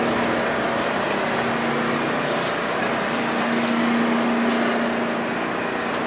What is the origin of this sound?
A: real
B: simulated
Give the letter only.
A